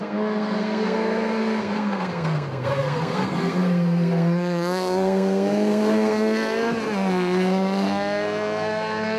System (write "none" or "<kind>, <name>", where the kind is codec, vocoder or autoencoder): codec, SNAC